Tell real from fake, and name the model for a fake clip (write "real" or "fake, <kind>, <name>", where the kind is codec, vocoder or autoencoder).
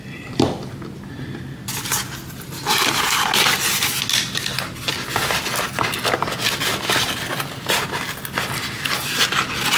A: real